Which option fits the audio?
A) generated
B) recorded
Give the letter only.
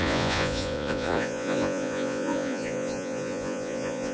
A